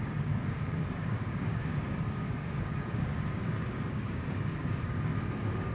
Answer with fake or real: fake